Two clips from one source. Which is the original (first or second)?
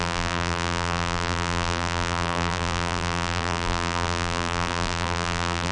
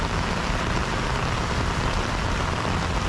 second